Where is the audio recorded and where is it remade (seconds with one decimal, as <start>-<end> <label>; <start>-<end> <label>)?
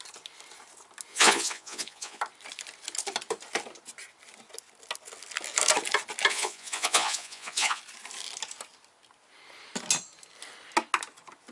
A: 0.0-1.1 recorded; 1.1-2.2 remade; 2.2-6.3 recorded; 6.3-7.8 remade; 7.8-11.5 recorded